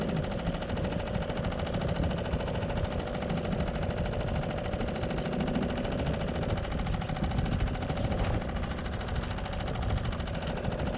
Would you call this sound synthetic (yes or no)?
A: no